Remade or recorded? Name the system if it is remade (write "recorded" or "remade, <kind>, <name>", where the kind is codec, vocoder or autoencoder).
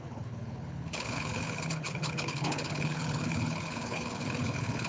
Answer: remade, codec, HILCodec